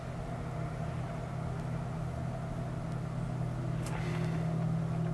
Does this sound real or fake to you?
real